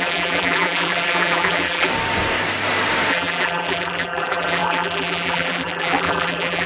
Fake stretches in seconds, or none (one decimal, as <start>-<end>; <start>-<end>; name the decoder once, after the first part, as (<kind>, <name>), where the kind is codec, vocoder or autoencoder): 0.0-1.9 (vocoder, BigVGAN v2); 3.1-6.7